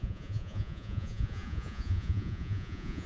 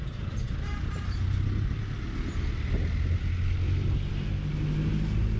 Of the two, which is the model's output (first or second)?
first